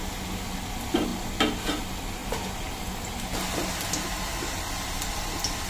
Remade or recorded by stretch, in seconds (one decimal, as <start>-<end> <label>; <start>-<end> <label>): 0.0-5.7 recorded